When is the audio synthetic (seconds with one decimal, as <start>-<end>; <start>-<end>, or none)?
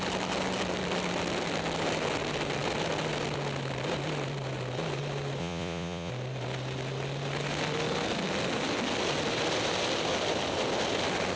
5.4-6.1